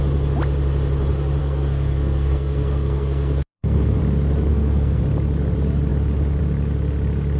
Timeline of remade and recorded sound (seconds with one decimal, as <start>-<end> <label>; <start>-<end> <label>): 0.0-1.4 recorded; 1.4-4.0 remade; 4.0-4.5 recorded; 4.5-5.0 remade; 5.0-7.4 recorded